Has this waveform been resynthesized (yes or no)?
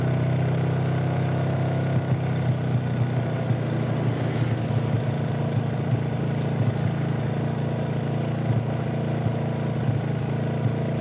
no